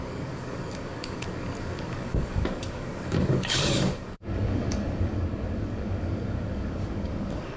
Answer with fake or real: fake